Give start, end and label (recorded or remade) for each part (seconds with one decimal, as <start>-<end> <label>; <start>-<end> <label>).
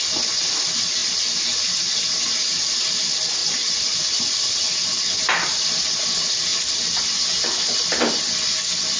0.0-1.0 recorded; 1.0-2.8 remade; 2.8-3.4 recorded; 3.4-4.0 remade; 4.0-6.5 recorded; 6.5-7.8 remade; 7.8-9.0 recorded